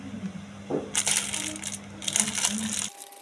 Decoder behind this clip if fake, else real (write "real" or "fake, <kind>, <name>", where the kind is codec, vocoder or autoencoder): real